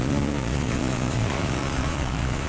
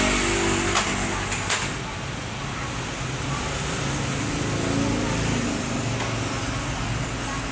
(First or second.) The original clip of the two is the second